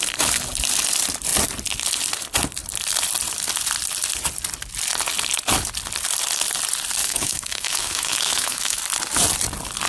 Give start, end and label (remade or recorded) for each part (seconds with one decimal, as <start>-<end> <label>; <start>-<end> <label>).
0.0-7.0 recorded; 7.0-8.8 remade; 8.8-9.9 recorded